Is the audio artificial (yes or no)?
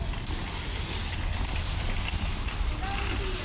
no